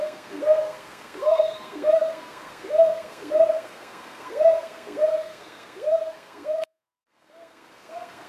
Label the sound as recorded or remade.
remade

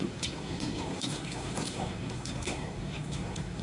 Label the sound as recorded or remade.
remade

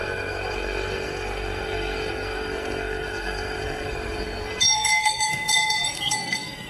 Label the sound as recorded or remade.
remade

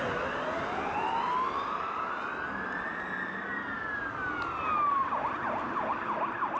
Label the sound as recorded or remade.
recorded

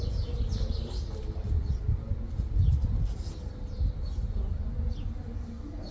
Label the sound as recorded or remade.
recorded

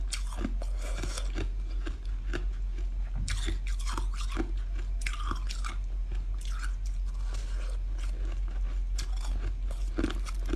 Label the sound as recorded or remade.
recorded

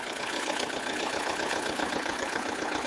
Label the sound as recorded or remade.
remade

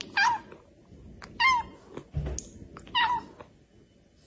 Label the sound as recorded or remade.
recorded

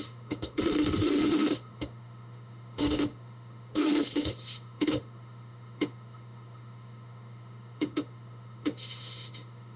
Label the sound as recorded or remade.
remade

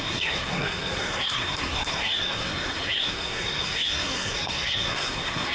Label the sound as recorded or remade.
remade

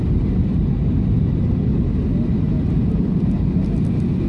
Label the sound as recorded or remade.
recorded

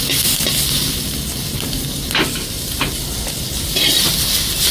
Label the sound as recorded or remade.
recorded